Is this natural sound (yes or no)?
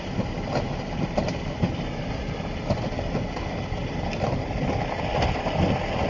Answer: yes